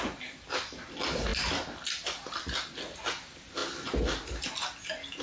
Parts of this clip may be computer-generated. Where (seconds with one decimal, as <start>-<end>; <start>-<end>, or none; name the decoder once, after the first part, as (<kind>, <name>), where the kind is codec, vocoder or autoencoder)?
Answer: none